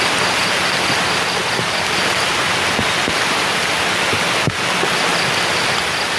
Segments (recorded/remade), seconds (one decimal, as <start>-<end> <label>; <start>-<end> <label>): 0.0-6.2 recorded